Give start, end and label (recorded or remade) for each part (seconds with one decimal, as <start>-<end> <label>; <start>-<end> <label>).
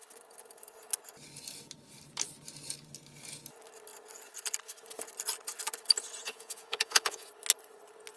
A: 0.0-6.2 recorded; 6.2-7.3 remade; 7.3-8.2 recorded